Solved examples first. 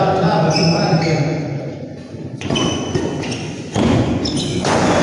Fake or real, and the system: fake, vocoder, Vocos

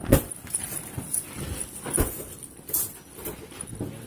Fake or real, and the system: real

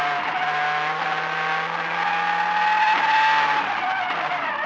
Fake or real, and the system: real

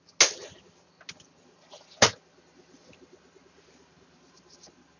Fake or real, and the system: real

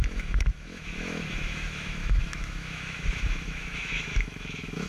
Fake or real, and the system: fake, autoencoder, DAC-VAE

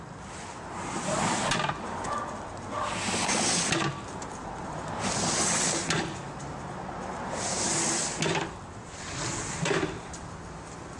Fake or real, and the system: real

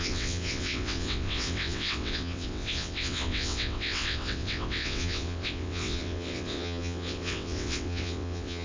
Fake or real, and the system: fake, vocoder, WaveNeXt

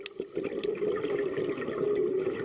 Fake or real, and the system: real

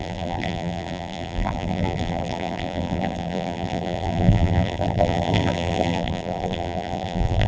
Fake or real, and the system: fake, vocoder, BigVGAN v2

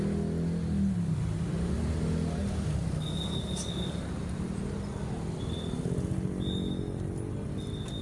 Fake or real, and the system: real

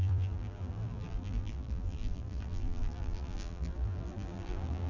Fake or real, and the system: fake, vocoder, BigVGAN v2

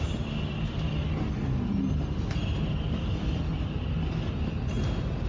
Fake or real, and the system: real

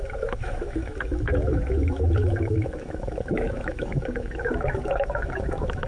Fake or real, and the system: fake, autoencoder, DAC-VAE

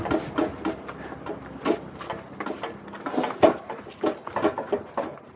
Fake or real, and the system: real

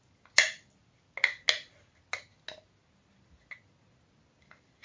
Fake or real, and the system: real